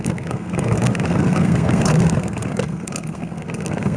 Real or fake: fake